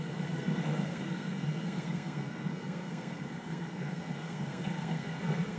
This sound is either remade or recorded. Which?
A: remade